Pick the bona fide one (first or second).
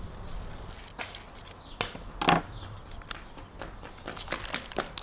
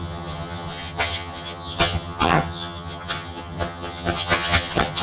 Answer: first